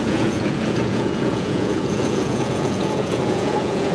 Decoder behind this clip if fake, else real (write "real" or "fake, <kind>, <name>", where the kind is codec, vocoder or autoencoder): fake, vocoder, Vocos